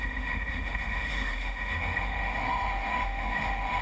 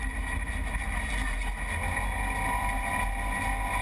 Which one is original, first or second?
second